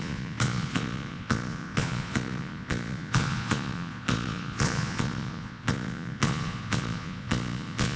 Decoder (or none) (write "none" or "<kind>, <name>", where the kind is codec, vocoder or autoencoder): vocoder, Vocos